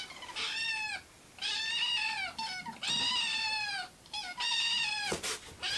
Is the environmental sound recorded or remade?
recorded